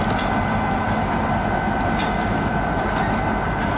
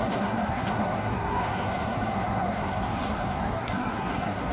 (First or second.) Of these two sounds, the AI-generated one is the second